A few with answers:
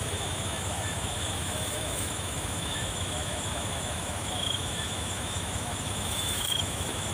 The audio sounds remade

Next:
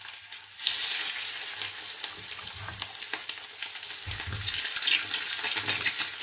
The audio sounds recorded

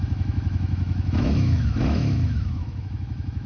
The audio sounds remade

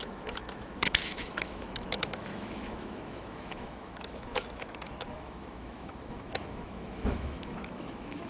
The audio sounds remade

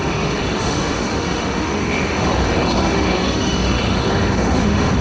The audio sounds remade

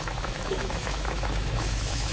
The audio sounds remade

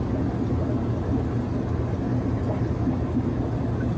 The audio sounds recorded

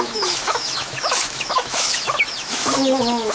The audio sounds remade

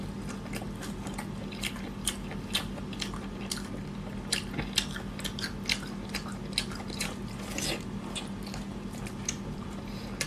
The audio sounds recorded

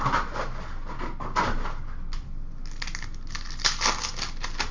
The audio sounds recorded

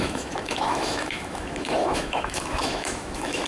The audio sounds remade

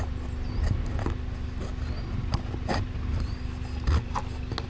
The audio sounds recorded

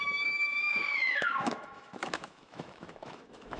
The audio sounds remade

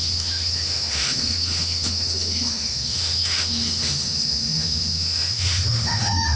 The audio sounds remade